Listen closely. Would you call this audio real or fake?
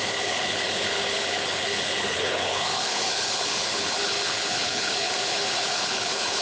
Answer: fake